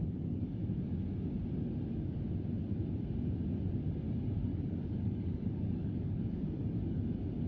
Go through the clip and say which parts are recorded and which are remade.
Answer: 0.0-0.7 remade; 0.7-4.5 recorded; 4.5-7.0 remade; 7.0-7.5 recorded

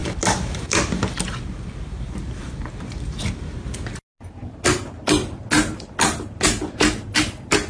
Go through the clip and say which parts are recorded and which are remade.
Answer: 0.0-7.7 recorded